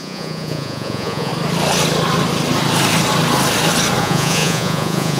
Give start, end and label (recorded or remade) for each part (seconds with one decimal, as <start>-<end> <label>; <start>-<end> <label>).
0.0-1.3 remade; 1.3-4.0 recorded; 4.0-5.2 remade